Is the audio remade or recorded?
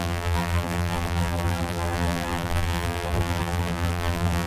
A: remade